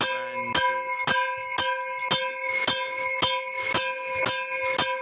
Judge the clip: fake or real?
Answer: real